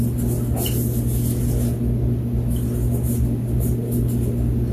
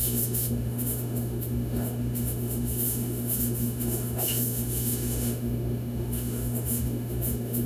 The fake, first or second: second